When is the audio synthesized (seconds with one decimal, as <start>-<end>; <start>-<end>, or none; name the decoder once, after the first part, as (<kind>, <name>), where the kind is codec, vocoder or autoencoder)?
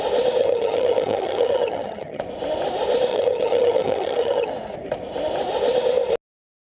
0.4-2.2 (vocoder, HiFi-GAN); 3.1-4.5